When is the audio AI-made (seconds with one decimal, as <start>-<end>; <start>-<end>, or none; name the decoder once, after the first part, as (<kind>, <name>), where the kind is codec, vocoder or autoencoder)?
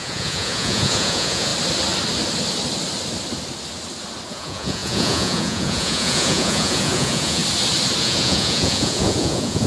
0.0-1.5 (vocoder, Vocos); 4.3-7.4; 8.0-9.7